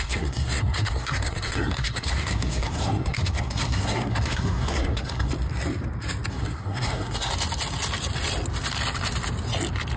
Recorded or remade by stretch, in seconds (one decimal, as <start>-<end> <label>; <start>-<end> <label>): 0.0-5.3 remade; 5.3-6.3 recorded; 6.3-7.3 remade; 7.3-10.0 recorded